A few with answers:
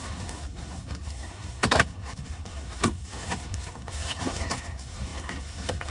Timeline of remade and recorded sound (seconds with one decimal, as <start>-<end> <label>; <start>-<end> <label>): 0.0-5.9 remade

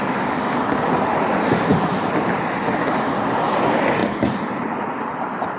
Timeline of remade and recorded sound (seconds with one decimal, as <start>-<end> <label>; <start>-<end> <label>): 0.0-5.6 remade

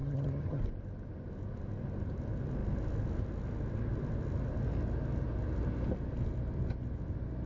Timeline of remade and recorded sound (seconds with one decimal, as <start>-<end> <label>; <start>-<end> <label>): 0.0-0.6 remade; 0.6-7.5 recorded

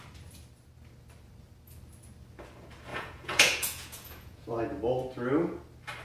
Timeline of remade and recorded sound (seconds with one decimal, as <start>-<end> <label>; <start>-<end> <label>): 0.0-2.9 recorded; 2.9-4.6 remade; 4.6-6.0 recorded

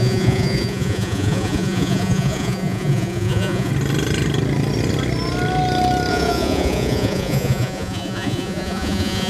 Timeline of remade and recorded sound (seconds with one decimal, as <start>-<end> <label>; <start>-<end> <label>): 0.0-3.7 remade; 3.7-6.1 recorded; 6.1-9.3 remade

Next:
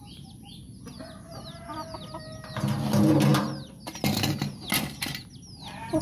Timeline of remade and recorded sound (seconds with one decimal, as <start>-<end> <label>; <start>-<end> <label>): 0.0-3.3 recorded; 3.3-4.4 remade; 4.4-6.0 recorded

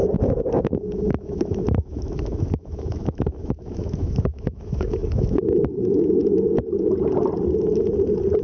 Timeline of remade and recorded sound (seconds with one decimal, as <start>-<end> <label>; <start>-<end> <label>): 0.0-0.6 recorded; 0.6-6.2 remade; 6.2-8.4 recorded